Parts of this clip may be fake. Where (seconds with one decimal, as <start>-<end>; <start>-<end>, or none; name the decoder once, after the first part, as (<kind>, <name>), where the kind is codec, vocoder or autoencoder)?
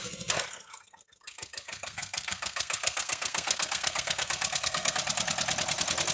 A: 0.0-5.0 (codec, SNAC)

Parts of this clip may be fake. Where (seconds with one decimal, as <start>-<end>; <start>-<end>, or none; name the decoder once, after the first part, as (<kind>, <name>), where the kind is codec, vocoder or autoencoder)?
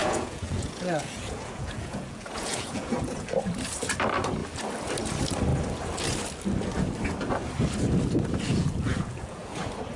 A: 0.0-3.4 (vocoder, Vocos); 8.5-9.6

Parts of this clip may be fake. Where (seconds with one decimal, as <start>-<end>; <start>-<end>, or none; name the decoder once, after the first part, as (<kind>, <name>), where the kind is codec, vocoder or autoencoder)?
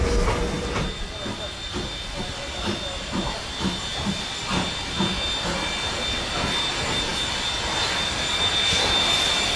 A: none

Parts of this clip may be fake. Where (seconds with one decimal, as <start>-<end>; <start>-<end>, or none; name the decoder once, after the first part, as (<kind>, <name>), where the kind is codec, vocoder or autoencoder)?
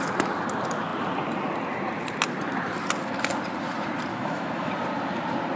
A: 4.1-4.7 (autoencoder, DAC-VAE)